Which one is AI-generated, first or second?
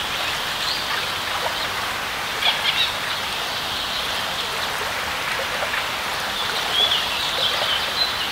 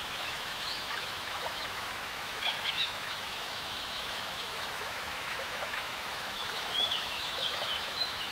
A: second